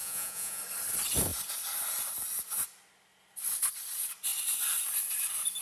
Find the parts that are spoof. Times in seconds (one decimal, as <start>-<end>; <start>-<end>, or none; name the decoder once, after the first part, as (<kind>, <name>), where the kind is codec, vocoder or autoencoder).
0.0-0.6 (vocoder, Vocos)

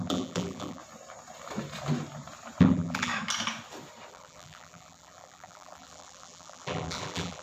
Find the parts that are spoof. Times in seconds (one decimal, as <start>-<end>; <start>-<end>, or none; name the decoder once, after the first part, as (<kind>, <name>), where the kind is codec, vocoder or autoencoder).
0.0-0.8 (vocoder, BigVGAN v2); 2.6-3.1; 4.1-7.4